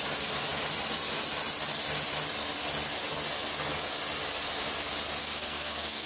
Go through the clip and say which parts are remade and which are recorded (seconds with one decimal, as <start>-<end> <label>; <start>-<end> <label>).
0.0-5.2 recorded; 5.2-6.1 remade